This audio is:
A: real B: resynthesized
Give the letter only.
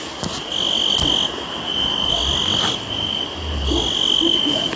A